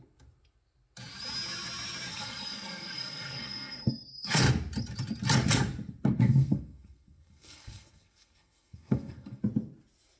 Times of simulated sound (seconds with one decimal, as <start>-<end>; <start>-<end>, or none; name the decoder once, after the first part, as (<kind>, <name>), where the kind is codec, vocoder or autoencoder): 2.1-4.5 (codec, SNAC); 6.2-9.4